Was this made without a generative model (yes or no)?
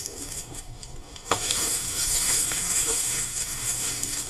no